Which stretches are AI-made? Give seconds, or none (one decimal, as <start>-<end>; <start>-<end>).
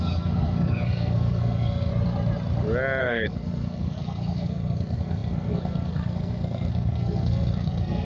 0.0-1.9; 3.0-8.0